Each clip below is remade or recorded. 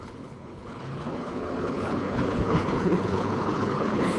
remade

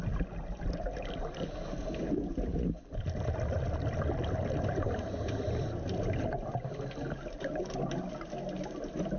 recorded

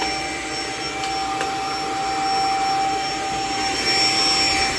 recorded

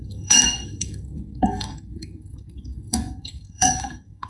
remade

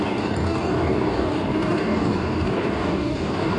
remade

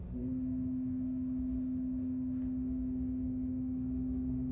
remade